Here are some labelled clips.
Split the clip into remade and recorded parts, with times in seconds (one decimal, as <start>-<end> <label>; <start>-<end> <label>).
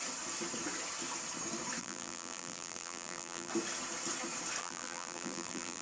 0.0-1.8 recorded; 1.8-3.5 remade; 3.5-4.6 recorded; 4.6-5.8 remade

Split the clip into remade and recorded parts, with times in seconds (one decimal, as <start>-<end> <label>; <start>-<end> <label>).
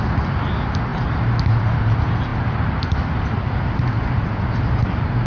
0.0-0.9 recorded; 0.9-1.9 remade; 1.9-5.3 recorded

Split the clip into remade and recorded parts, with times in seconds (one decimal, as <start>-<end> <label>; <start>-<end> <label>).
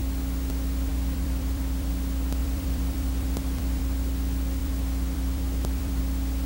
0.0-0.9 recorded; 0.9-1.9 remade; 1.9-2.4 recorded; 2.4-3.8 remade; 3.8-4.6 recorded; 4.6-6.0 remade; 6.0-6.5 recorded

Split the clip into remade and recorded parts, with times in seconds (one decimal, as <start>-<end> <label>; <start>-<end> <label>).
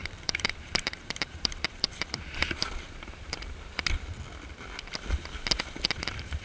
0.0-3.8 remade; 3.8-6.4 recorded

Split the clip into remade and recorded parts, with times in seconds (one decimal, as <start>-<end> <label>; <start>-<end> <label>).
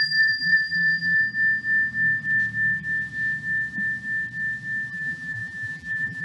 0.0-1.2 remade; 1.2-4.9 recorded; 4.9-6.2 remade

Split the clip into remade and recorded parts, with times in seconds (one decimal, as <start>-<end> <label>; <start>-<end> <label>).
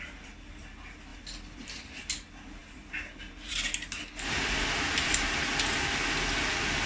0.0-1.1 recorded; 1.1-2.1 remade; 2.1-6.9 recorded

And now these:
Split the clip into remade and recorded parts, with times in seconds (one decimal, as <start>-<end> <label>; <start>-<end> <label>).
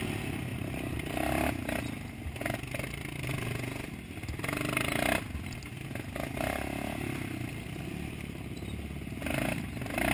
0.0-0.5 recorded; 0.5-1.5 remade; 1.5-10.1 recorded